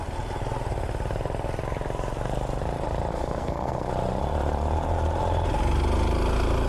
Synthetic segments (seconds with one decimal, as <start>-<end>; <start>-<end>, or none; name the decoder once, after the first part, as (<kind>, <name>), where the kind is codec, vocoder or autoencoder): 3.1-3.9 (codec, SNAC)